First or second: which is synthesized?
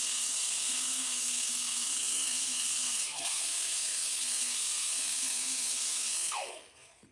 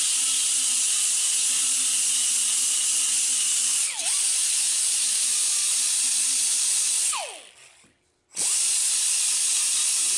first